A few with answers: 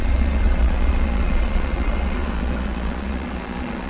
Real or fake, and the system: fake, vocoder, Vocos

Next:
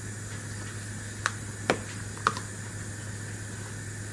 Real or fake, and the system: real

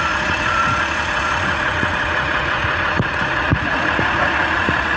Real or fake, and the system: fake, vocoder, Vocos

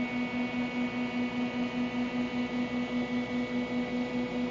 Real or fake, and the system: real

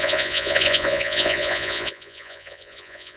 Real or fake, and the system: fake, vocoder, Vocos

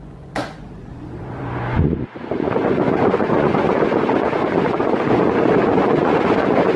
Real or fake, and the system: fake, vocoder, Vocos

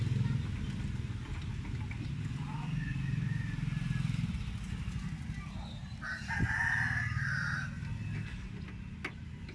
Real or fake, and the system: real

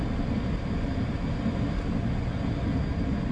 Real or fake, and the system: real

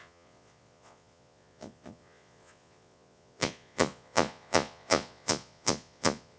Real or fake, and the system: fake, vocoder, Vocos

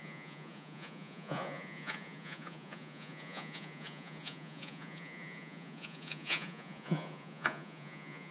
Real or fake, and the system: fake, vocoder, Vocos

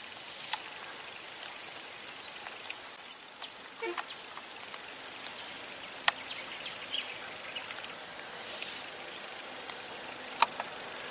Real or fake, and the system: real